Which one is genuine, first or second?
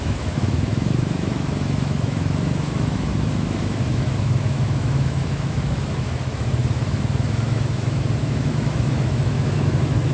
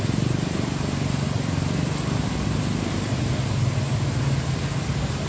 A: second